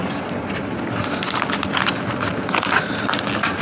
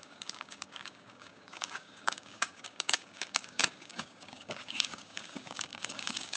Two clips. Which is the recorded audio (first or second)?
first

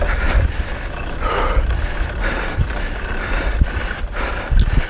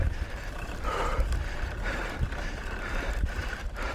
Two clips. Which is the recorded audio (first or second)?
first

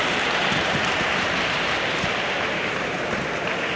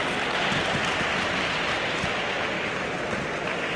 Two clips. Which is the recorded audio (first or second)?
second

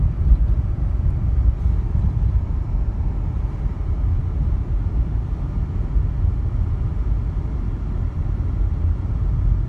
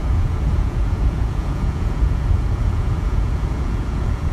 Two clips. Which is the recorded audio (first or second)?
first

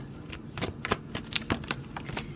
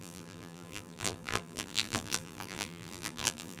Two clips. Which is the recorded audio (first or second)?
first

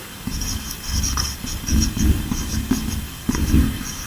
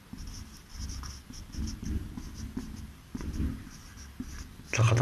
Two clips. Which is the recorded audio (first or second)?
second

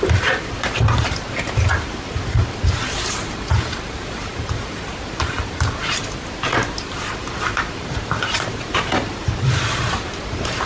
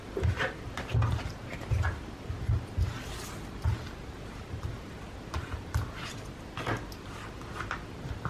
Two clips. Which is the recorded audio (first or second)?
second